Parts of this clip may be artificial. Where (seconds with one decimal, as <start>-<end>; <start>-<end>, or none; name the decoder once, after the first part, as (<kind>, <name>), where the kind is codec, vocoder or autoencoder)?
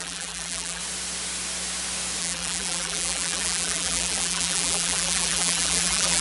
0.0-0.8 (vocoder, BigVGAN v2); 2.2-6.2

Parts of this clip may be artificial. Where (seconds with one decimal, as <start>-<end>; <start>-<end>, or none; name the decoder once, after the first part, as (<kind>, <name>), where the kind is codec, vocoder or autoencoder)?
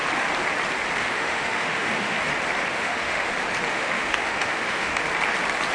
1.0-2.2 (autoencoder, DAC-VAE); 2.7-3.3; 3.7-5.0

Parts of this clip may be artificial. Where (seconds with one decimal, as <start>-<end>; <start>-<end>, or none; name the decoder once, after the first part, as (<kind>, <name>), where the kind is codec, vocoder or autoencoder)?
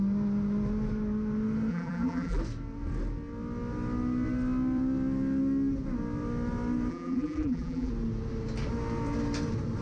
1.7-2.4 (vocoder, BigVGAN v2); 6.9-7.9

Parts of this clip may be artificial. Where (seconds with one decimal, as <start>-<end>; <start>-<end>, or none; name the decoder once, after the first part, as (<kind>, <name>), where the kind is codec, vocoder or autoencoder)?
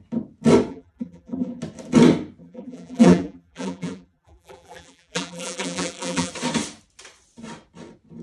0.7-1.6 (vocoder, BigVGAN v2); 2.4-6.3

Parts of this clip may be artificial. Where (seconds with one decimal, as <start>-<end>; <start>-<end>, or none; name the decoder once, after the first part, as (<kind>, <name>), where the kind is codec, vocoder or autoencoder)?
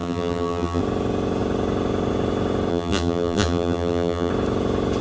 0.0-0.8 (vocoder, BigVGAN v2); 2.7-4.3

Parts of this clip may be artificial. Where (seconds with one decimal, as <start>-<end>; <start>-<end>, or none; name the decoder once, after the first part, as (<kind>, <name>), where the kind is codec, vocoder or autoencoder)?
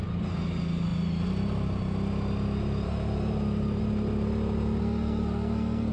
4.8-5.9 (codec, SNAC)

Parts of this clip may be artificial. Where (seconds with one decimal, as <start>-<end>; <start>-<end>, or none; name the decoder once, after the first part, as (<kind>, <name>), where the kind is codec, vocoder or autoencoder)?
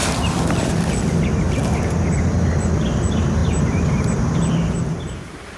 3.4-5.6 (vocoder, BigVGAN v2)